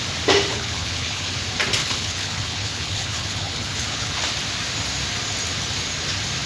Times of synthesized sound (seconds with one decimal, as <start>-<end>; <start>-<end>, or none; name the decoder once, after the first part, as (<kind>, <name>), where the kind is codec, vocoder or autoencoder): 0.5-1.3 (codec, HILCodec); 1.8-4.2